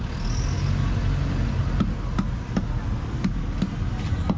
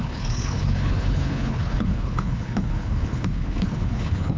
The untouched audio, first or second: first